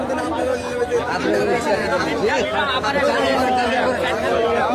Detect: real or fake real